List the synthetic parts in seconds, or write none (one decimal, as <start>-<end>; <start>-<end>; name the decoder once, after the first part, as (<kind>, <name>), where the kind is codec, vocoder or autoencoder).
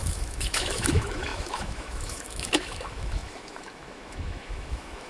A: 0.0-5.1 (autoencoder, DAC-VAE)